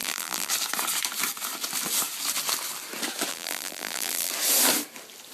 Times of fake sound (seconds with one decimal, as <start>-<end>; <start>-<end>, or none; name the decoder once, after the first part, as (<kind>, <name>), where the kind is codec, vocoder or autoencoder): 0.0-0.5 (vocoder, BigVGAN v2); 3.3-4.3